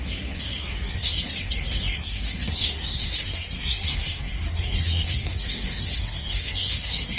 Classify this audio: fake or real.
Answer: fake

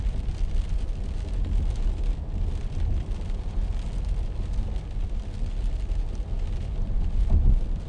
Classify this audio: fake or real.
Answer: real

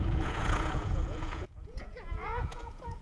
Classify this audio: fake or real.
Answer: fake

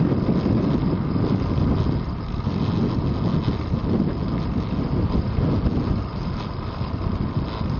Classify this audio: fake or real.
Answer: real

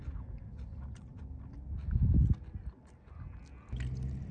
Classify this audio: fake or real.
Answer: real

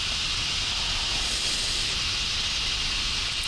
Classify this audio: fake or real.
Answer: real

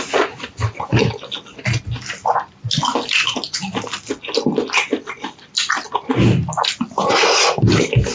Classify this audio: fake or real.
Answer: real